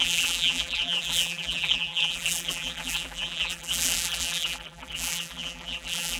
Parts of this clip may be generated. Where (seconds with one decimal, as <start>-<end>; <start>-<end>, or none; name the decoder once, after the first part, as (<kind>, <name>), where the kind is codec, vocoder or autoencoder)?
0.0-6.2 (vocoder, BigVGAN v2)